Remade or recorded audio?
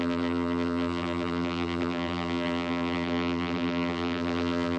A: remade